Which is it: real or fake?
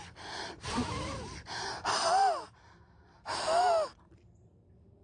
real